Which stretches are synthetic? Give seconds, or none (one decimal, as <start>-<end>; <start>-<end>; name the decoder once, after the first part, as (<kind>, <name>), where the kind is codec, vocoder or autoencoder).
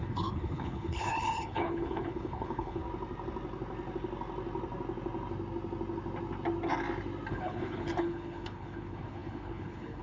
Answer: 0.0-2.8 (codec, HILCodec); 7.3-10.0